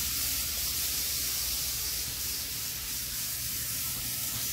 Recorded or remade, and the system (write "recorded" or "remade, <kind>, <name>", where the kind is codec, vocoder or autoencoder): remade, vocoder, BigVGAN v2